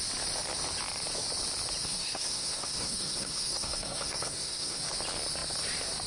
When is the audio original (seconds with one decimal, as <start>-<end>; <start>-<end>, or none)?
0.0-1.8; 4.8-6.1